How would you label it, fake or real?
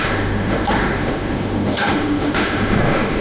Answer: fake